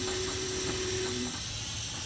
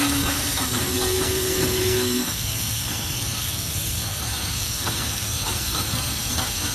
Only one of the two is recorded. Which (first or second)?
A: first